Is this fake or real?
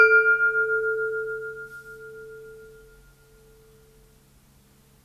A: real